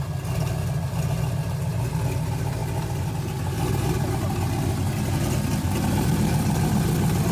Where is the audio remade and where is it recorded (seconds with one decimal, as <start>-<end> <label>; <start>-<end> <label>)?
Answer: 0.0-7.3 recorded